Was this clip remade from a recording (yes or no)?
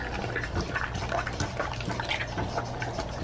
no